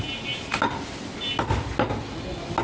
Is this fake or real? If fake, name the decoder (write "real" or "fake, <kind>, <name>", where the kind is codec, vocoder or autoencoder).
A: real